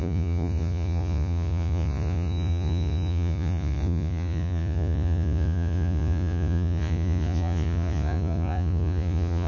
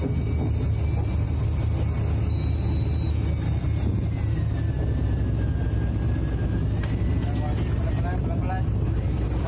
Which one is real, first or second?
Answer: second